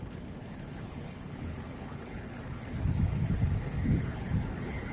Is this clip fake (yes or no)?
yes